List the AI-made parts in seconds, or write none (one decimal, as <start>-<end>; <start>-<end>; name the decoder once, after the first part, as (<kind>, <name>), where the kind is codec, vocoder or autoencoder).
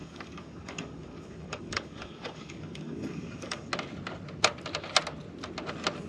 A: 0.0-3.7 (codec, DAC)